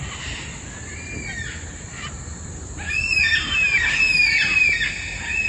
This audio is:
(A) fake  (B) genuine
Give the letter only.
B